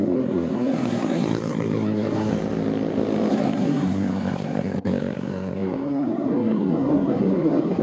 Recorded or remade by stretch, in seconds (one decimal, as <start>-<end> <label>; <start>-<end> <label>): 0.0-2.3 remade; 2.3-3.3 recorded; 3.3-7.8 remade